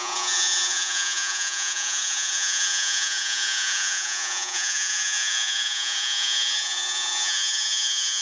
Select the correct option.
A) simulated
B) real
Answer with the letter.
A